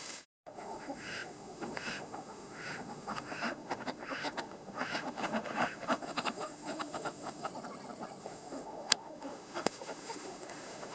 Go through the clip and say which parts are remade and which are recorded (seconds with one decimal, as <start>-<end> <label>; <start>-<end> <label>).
0.0-7.5 remade; 7.5-8.2 recorded; 8.2-10.9 remade